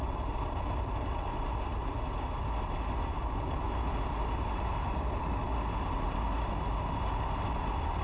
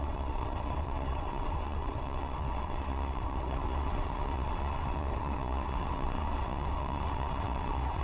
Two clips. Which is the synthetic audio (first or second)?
second